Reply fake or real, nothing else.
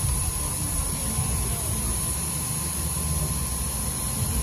fake